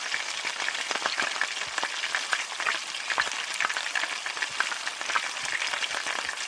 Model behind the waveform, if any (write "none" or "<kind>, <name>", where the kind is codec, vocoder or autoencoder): none